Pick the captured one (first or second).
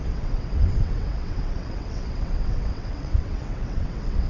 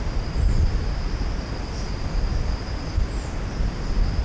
second